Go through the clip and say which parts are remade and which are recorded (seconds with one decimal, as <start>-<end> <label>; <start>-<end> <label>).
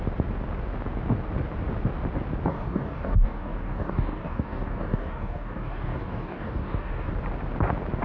0.0-2.5 recorded; 2.5-7.1 remade; 7.1-8.0 recorded